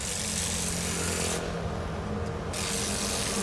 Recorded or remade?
recorded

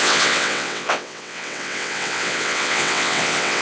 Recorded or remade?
remade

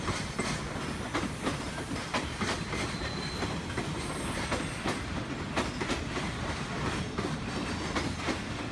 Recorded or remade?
recorded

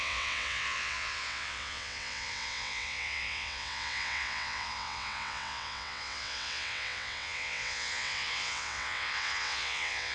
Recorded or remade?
remade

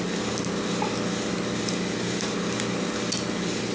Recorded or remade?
recorded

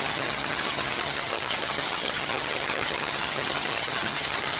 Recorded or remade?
remade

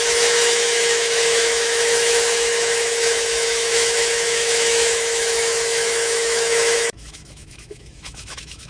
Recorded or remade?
remade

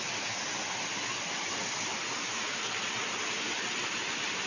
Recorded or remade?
recorded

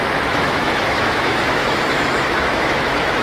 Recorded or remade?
remade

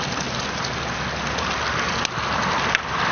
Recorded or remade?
recorded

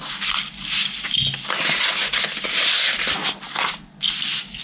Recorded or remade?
recorded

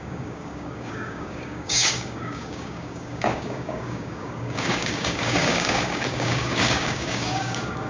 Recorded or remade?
remade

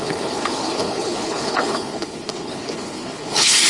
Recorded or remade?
remade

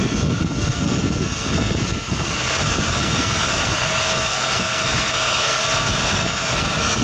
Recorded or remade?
remade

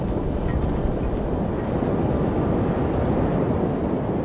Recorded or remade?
recorded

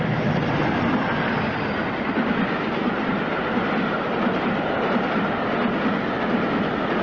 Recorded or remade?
recorded